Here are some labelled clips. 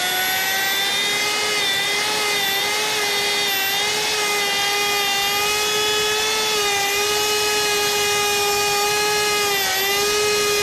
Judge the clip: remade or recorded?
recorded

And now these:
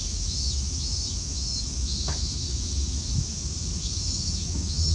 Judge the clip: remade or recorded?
remade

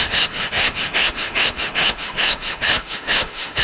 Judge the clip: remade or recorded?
remade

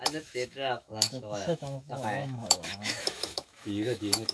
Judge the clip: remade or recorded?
remade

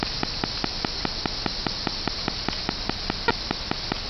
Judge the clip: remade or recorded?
recorded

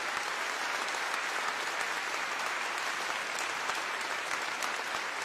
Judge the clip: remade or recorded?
recorded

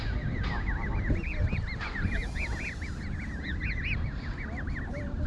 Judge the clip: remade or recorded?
recorded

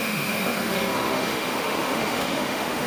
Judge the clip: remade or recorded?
remade